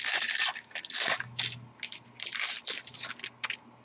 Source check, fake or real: real